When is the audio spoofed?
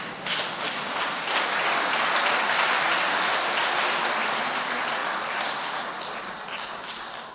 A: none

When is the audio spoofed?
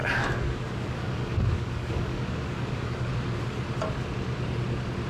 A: 0.0-3.1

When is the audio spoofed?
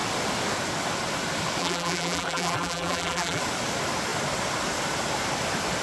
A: 1.6-3.4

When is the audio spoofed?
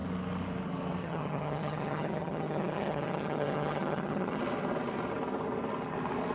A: 1.0-4.4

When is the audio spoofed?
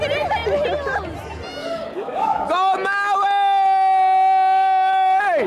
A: 1.6-2.5